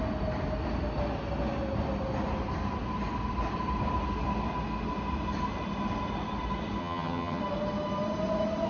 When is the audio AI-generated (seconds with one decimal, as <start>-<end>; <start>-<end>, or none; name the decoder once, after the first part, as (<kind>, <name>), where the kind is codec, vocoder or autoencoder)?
6.8-7.4 (vocoder, HiFi-GAN)